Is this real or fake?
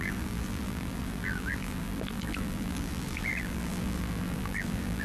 fake